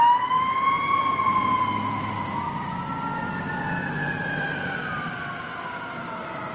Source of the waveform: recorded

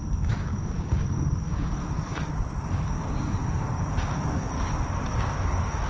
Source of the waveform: remade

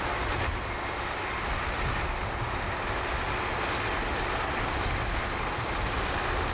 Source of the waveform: recorded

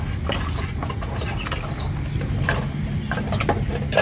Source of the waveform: recorded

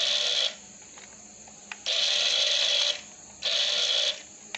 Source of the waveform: recorded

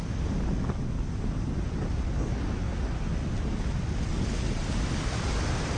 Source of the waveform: recorded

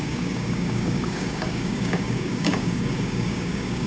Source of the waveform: remade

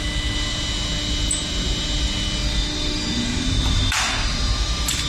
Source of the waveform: recorded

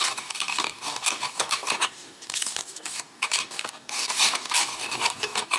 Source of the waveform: remade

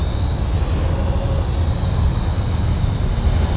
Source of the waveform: recorded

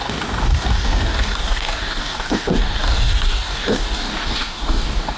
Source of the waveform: remade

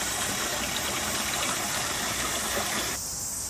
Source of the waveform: recorded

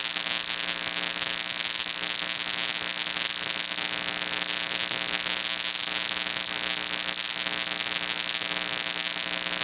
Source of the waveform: recorded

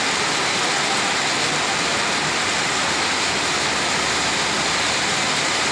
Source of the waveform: recorded